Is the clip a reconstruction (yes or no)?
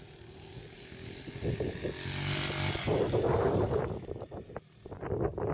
no